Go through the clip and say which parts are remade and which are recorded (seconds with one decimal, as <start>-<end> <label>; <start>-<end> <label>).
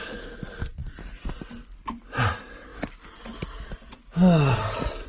0.0-5.1 recorded